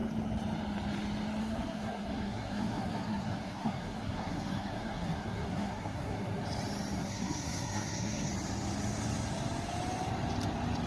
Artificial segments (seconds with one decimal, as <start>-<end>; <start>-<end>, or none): 1.4-6.4; 7.0-8.3